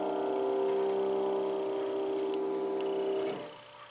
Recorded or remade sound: recorded